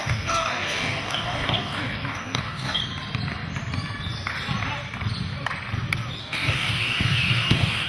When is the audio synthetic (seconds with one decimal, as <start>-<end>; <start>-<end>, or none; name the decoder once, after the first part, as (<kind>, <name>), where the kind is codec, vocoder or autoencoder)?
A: 0.0-2.8 (codec, DAC); 6.2-7.9

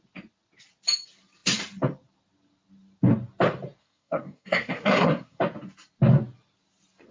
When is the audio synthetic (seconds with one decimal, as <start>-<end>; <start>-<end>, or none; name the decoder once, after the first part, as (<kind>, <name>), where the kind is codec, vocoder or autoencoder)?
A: 3.8-5.4 (codec, SNAC)

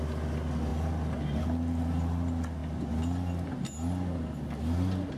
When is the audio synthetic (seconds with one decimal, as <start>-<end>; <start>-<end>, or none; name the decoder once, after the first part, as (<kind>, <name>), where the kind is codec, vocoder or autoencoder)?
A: none

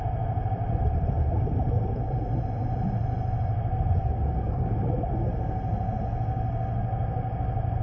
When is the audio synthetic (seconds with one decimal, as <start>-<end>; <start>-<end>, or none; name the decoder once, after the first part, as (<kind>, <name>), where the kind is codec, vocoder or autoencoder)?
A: 4.0-4.7 (codec, DAC)

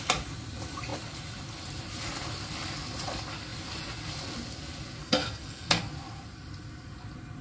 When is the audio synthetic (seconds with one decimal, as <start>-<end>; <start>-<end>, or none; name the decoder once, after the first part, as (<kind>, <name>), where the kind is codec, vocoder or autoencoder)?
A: 5.0-5.8 (codec, SNAC)

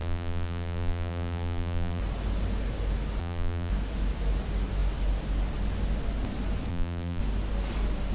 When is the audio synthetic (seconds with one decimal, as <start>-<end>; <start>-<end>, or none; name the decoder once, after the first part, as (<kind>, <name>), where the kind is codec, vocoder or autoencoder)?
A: 0.0-2.0 (vocoder, BigVGAN v2); 3.2-3.7; 6.7-7.2